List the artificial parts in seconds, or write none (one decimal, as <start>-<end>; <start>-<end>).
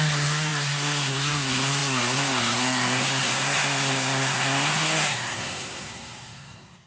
0.0-6.9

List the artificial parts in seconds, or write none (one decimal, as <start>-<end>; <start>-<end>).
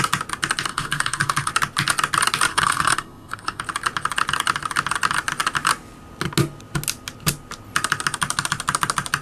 0.7-1.5; 2.5-3.6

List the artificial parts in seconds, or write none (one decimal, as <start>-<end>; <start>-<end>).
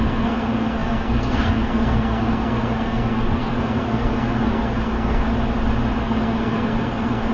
0.0-5.3; 6.0-7.3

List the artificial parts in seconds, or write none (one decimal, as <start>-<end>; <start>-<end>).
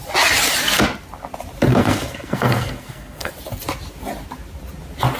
1.7-3.3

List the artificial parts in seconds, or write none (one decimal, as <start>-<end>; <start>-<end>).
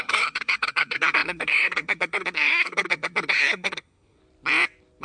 0.0-4.2